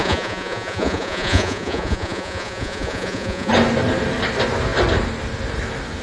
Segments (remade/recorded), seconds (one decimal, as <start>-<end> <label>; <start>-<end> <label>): 0.0-3.5 remade; 3.5-6.0 recorded